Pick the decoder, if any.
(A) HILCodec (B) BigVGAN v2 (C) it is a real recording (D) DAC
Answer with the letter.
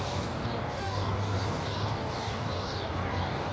D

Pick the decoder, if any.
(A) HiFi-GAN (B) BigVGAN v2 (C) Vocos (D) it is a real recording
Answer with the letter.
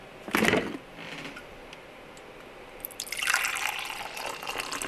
D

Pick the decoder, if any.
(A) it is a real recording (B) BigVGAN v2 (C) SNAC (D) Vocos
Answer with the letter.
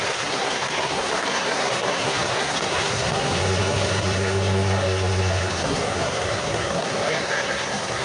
C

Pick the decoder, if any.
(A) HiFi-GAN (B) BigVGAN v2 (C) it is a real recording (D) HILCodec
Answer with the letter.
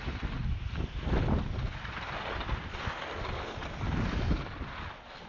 C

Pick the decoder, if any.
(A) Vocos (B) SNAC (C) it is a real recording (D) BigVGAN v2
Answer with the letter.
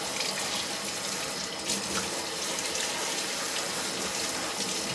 C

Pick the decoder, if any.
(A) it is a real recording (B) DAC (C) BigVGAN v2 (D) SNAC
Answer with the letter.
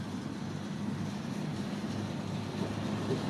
A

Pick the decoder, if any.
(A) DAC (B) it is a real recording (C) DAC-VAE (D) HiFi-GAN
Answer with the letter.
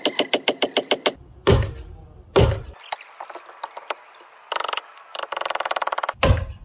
B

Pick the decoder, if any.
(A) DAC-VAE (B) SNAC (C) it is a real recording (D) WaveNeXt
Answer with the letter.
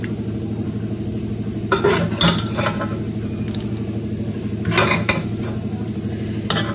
C